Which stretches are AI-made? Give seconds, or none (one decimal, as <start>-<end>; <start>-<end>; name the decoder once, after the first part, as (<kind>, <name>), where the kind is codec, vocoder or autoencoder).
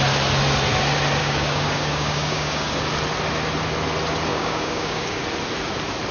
1.2-2.8 (codec, DAC); 4.3-5.2